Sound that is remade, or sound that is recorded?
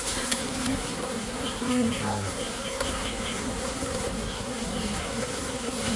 remade